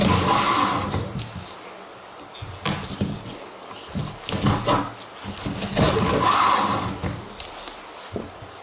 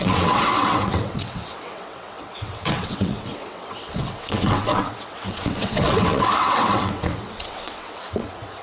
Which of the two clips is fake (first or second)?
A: second